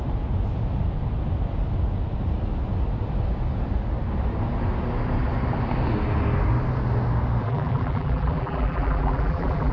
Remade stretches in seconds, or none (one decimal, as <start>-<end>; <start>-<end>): 7.4-9.7